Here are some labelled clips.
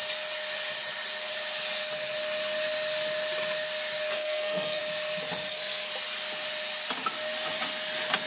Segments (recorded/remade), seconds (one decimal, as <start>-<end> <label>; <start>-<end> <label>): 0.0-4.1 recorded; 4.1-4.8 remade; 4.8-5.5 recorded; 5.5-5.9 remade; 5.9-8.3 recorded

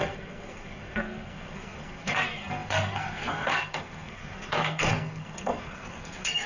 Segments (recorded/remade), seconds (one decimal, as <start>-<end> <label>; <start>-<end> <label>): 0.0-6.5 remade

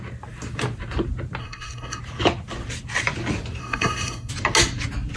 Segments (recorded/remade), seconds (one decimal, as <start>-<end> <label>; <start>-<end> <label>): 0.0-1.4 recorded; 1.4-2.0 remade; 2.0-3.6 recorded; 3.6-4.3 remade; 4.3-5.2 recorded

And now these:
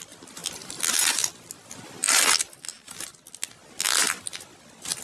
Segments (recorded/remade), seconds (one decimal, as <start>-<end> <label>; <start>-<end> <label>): 0.0-5.0 recorded